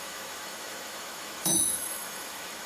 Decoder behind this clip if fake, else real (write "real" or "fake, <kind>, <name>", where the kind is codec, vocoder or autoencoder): fake, autoencoder, DAC-VAE